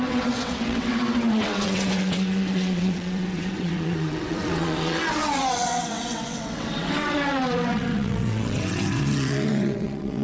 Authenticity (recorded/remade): remade